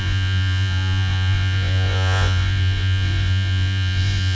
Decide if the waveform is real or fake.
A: fake